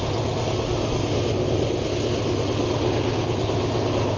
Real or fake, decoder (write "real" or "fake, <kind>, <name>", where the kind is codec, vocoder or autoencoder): real